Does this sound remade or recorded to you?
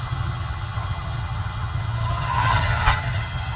remade